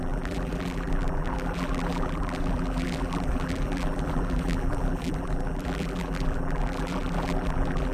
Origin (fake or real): fake